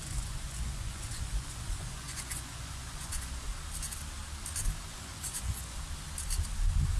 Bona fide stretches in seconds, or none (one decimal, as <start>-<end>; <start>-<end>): 3.5-4.9; 5.8-7.0